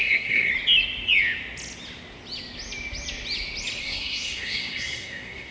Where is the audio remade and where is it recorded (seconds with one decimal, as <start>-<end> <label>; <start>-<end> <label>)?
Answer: 0.0-0.5 remade; 0.5-3.8 recorded; 3.8-5.5 remade

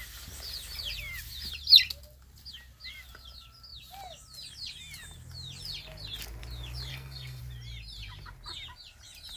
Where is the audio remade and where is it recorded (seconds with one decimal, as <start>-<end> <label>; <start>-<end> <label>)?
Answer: 0.0-6.9 recorded; 6.9-7.4 remade; 7.4-9.4 recorded

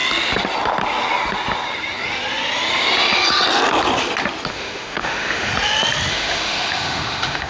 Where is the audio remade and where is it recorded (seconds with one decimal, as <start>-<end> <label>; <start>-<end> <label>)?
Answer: 0.0-4.5 recorded; 4.5-5.5 remade; 5.5-6.1 recorded; 6.1-7.5 remade

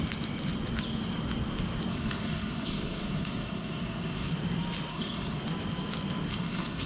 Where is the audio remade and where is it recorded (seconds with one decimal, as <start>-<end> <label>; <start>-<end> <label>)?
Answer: 0.0-1.9 recorded; 1.9-4.3 remade; 4.3-4.9 recorded; 4.9-5.4 remade; 5.4-6.3 recorded; 6.3-6.9 remade

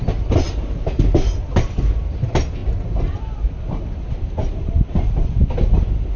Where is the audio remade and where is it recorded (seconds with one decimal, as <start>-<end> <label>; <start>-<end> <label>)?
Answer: 0.0-6.2 recorded

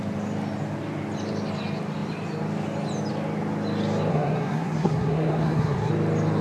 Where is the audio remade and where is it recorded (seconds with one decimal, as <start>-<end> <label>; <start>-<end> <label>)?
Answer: 0.0-4.1 recorded; 4.1-5.9 remade; 5.9-6.4 recorded

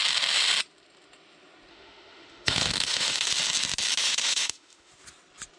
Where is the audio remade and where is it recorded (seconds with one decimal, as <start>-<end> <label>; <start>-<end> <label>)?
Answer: 0.0-1.7 recorded; 1.7-3.3 remade; 3.3-4.0 recorded; 4.0-4.9 remade; 4.9-5.6 recorded